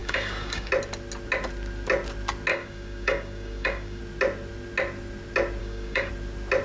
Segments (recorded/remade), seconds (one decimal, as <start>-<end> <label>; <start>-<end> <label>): 0.0-0.7 remade; 0.7-2.5 recorded; 2.5-4.0 remade; 4.0-5.6 recorded; 5.6-6.1 remade; 6.1-6.6 recorded